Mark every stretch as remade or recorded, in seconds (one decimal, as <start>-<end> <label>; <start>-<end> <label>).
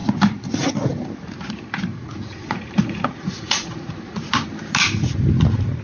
0.0-1.9 recorded; 1.9-4.3 remade; 4.3-5.8 recorded